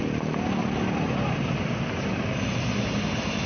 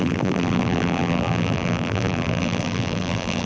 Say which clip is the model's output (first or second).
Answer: second